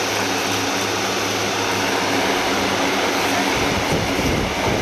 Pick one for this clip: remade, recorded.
recorded